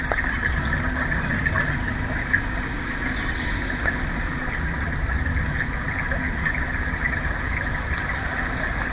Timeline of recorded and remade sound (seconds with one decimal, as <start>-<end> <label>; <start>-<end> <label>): 0.0-8.9 recorded